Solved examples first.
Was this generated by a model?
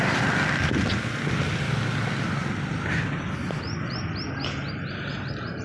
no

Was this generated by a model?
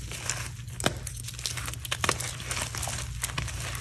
no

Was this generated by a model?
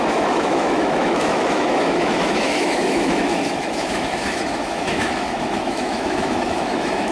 yes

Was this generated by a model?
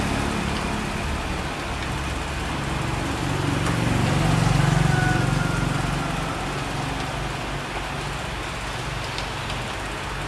no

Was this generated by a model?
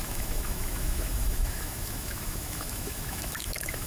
yes